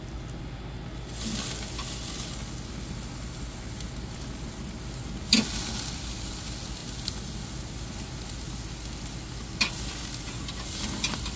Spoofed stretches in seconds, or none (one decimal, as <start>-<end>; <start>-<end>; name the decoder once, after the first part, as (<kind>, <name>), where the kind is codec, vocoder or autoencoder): none